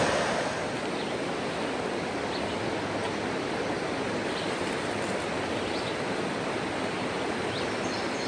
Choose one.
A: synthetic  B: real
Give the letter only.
B